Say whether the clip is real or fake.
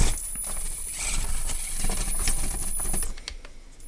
real